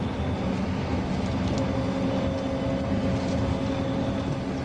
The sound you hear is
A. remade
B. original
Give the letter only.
B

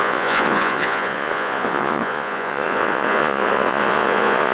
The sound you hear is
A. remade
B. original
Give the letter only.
A